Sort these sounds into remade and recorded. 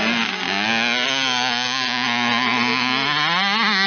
recorded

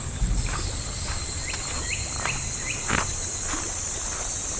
recorded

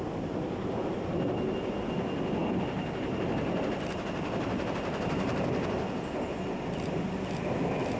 recorded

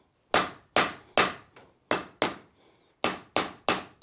recorded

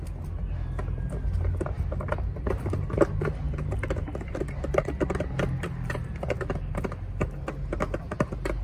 recorded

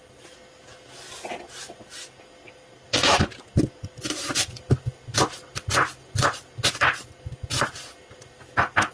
recorded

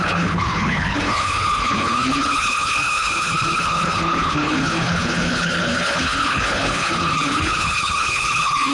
remade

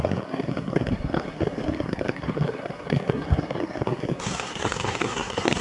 remade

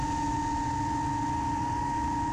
recorded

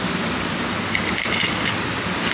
remade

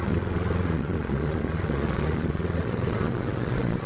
remade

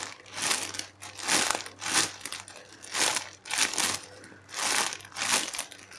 recorded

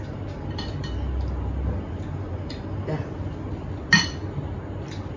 recorded